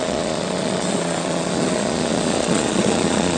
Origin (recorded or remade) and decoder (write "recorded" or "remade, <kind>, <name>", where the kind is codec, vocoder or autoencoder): remade, vocoder, Vocos